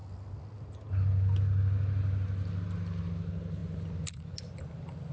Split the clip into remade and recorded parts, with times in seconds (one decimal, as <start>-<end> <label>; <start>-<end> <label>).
0.0-5.1 recorded